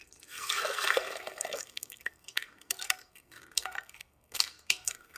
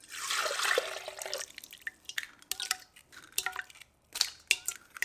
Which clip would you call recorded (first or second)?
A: second